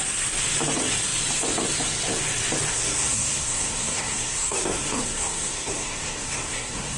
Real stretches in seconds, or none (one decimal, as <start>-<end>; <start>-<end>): 0.0-2.7

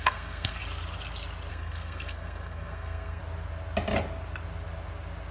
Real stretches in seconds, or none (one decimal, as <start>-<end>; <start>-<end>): 0.6-1.5; 3.2-5.3

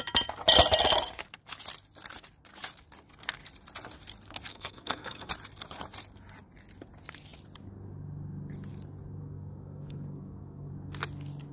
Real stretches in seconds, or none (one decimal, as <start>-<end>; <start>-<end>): 0.0-4.5; 5.3-9.2; 10.7-11.5

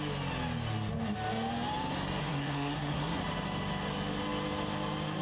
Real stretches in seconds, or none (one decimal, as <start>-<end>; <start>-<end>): 0.0-2.2; 3.2-5.2